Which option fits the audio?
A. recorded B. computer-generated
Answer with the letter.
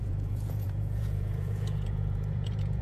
B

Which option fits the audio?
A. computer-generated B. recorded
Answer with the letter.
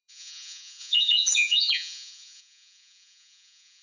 A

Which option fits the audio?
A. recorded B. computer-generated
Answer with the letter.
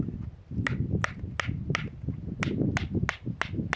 A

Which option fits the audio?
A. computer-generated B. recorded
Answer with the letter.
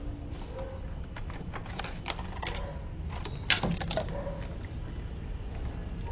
B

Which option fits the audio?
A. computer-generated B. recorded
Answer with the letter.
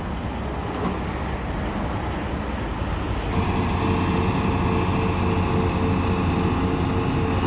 B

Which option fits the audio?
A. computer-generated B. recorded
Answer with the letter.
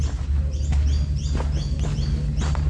B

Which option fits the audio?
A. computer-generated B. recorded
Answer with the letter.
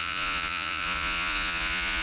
A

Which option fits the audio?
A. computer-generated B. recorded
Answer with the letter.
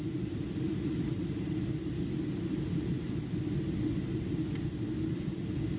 B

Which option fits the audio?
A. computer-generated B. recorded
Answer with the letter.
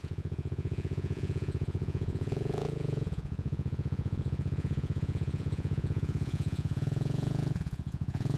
A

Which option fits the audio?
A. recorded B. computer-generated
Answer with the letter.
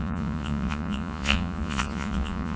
B